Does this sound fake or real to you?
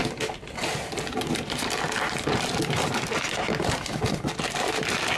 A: real